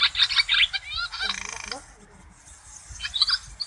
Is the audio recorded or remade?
recorded